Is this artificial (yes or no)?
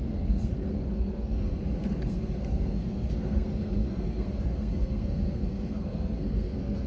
yes